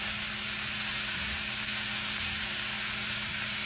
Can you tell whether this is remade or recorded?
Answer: recorded